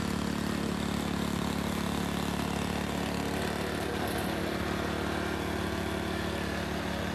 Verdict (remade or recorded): recorded